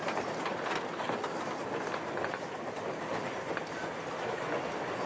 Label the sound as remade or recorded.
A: recorded